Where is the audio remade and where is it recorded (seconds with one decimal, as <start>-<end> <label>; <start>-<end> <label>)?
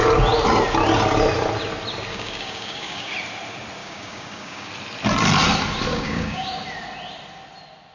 0.0-2.1 recorded; 2.1-3.1 remade; 3.1-3.8 recorded; 3.8-4.7 remade; 4.7-5.9 recorded; 5.9-6.5 remade; 6.5-7.9 recorded